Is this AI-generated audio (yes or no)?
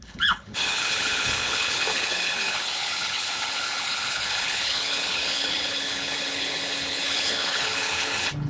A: yes